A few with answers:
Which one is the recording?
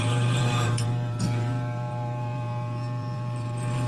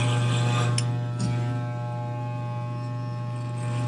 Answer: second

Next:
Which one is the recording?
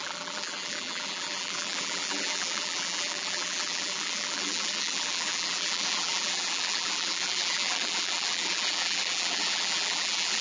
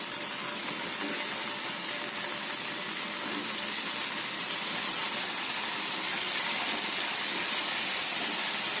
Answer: second